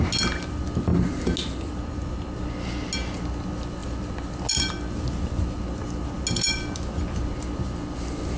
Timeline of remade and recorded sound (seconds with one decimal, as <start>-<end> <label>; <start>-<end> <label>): 0.0-8.4 recorded